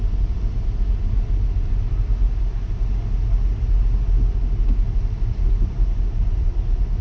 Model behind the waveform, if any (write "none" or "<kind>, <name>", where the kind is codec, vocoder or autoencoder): none